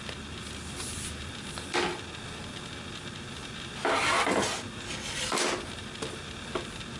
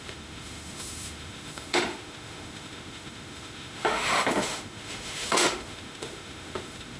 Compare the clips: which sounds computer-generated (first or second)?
second